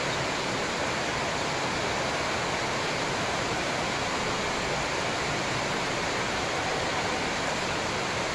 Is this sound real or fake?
real